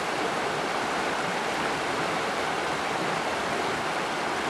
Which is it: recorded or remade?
recorded